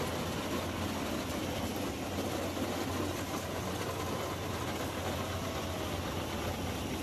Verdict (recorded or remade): recorded